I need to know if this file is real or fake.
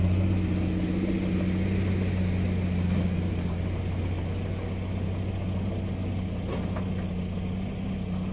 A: real